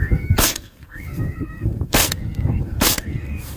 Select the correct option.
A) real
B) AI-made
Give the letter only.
B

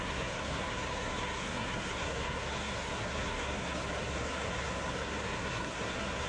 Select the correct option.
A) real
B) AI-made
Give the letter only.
B